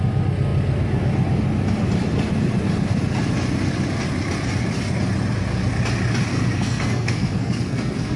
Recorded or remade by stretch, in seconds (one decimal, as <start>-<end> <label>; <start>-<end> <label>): 0.0-6.3 recorded; 6.3-8.2 remade